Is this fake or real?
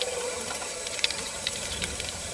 fake